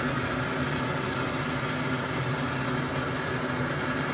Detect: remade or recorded recorded